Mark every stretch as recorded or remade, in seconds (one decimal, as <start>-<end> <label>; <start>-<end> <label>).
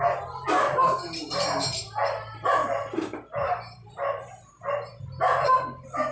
0.0-2.6 recorded; 2.6-4.3 remade; 4.3-6.1 recorded